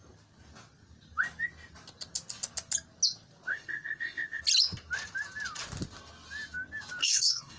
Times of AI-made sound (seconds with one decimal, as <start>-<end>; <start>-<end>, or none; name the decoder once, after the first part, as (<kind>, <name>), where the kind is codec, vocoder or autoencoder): 3.5-4.4 (codec, SNAC); 7.0-7.6

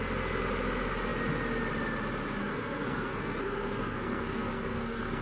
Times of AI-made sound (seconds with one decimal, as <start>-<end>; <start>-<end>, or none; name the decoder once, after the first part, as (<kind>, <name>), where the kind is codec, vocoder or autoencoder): 2.4-5.2 (codec, SNAC)

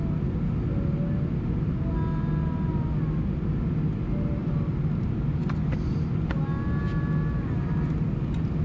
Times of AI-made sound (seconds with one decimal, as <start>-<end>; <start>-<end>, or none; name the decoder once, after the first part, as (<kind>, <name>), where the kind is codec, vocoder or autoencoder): none